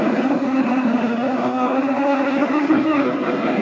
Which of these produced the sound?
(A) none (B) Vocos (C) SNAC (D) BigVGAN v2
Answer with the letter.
C